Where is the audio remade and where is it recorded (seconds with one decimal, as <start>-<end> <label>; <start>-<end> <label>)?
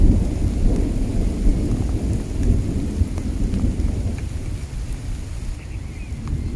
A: 0.0-6.6 recorded